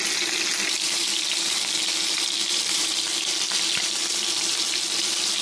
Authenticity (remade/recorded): recorded